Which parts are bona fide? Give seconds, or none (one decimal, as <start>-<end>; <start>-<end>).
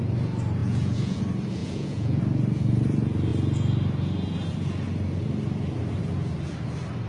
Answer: 0.0-0.6; 1.2-1.6; 2.2-7.1